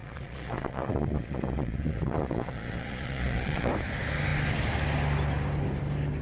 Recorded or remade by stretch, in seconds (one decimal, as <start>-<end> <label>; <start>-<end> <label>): 0.0-3.7 remade; 3.7-6.2 recorded